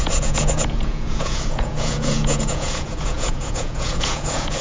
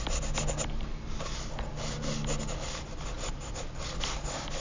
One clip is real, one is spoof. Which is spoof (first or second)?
first